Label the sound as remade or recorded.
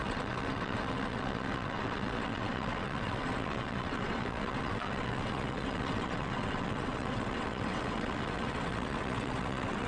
remade